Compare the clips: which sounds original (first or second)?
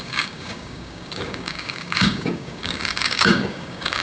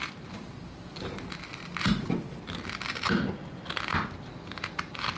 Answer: second